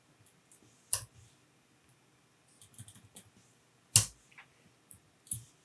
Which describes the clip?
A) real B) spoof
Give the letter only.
A